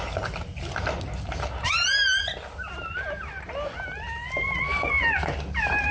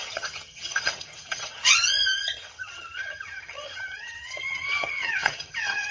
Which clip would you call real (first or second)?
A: first